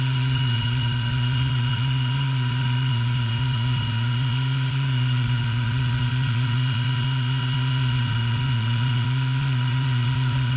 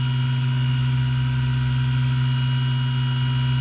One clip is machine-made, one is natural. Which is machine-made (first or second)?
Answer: first